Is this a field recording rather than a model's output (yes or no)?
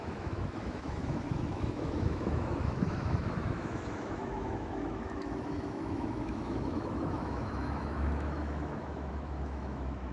no